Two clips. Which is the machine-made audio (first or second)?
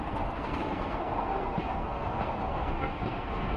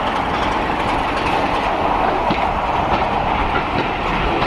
first